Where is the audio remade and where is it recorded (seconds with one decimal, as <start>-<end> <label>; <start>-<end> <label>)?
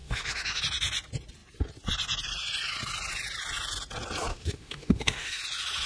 0.0-0.6 remade; 0.6-4.3 recorded; 4.3-5.4 remade; 5.4-5.9 recorded